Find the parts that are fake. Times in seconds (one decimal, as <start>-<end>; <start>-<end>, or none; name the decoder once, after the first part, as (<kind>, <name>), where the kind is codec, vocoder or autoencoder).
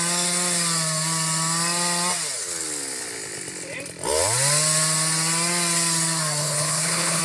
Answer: 6.4-7.2 (codec, HILCodec)